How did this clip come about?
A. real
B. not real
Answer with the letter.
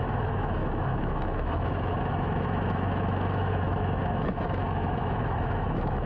B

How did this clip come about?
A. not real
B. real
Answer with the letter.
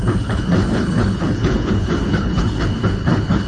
A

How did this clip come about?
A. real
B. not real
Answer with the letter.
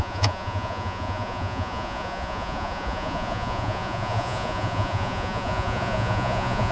B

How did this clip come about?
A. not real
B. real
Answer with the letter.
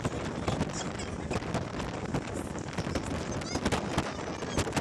B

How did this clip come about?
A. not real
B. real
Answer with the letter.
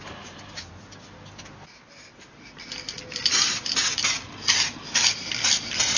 B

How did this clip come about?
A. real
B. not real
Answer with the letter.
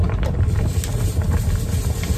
A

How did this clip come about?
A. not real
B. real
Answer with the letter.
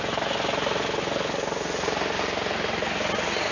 B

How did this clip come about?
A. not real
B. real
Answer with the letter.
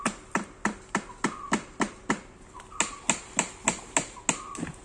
B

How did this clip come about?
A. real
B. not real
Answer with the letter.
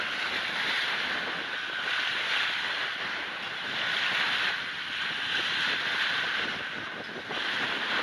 A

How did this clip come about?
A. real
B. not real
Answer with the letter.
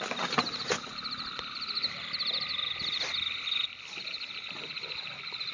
A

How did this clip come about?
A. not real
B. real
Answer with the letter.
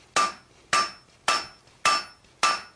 B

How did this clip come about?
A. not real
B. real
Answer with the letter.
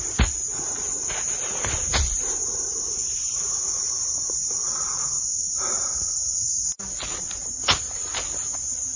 B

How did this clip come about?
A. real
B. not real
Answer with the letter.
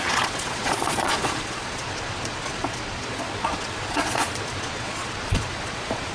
B